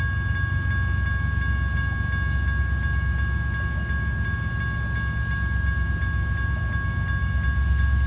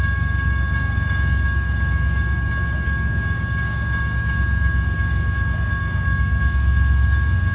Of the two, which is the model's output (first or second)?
second